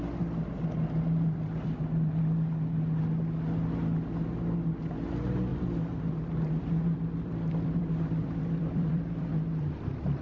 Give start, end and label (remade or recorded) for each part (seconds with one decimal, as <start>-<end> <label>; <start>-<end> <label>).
0.0-5.5 recorded; 5.5-9.3 remade; 9.3-10.2 recorded